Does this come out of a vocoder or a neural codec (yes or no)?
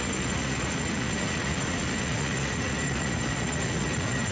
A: yes